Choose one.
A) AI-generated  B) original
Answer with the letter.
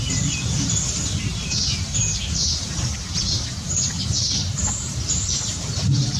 A